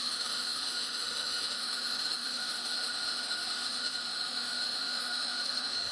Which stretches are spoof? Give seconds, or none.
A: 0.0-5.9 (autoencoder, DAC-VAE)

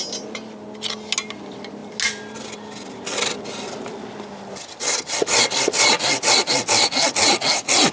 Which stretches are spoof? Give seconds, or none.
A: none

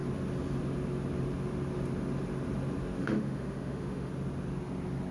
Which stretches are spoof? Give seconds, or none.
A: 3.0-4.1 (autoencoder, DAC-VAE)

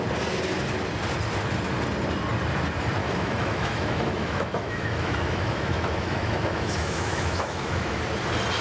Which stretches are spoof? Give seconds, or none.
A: 3.0-8.0 (autoencoder, DAC-VAE)

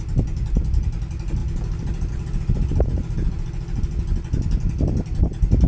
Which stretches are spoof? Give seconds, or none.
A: none

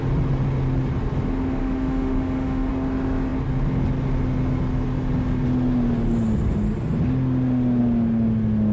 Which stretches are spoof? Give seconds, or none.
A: 1.6-2.7 (autoencoder, DAC-VAE)